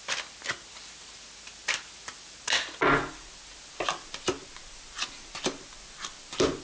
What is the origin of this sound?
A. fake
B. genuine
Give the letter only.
B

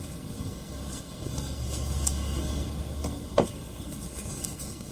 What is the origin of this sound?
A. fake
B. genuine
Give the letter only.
A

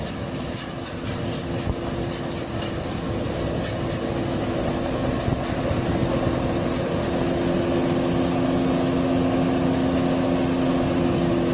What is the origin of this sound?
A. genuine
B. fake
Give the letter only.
A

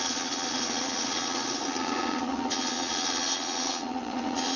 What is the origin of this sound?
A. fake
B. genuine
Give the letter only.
A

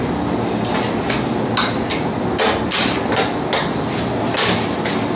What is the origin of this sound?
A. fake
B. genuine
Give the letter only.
B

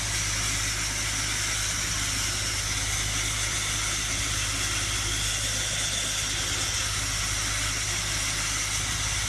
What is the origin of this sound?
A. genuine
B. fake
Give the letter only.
A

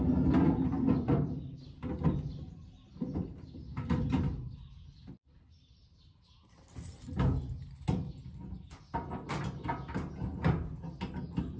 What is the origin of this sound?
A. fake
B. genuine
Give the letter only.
B